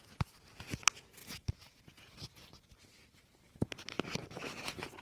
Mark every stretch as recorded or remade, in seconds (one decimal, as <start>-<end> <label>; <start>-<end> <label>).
0.0-1.2 recorded; 1.2-1.8 remade; 1.8-5.0 recorded